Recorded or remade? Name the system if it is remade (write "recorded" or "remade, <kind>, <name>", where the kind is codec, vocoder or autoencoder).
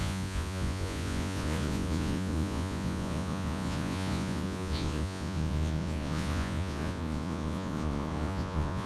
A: remade, vocoder, Vocos